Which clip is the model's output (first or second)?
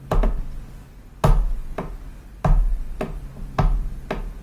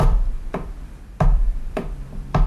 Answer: second